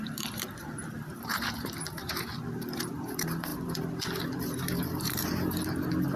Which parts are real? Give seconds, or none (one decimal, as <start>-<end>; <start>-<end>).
none